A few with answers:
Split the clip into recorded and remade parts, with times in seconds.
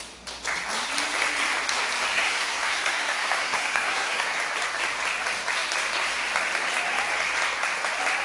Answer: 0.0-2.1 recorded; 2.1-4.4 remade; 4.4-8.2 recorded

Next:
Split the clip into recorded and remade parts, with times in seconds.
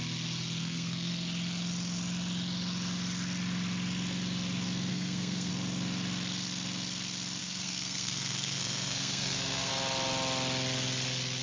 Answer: 0.0-0.6 recorded; 0.6-1.1 remade; 1.1-4.9 recorded; 4.9-5.5 remade; 5.5-7.4 recorded; 7.4-9.7 remade; 9.7-11.4 recorded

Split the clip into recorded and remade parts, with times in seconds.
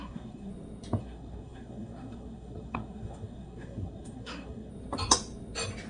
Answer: 0.0-0.5 remade; 0.5-1.0 recorded; 1.0-4.7 remade; 4.7-5.9 recorded